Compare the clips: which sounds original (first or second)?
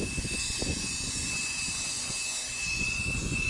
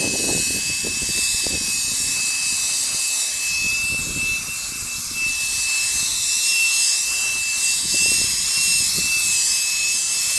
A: second